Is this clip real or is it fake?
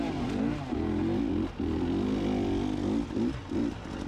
real